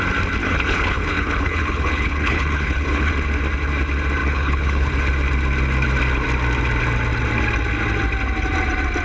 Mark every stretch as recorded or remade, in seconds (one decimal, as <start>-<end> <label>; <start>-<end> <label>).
0.0-0.4 recorded; 0.4-3.1 remade; 3.1-4.2 recorded; 4.2-4.9 remade; 4.9-9.0 recorded